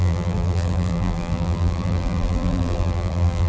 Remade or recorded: remade